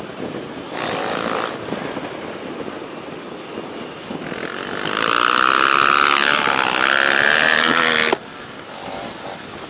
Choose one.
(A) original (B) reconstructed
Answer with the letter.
A